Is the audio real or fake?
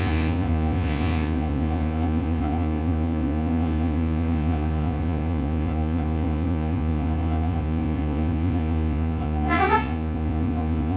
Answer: fake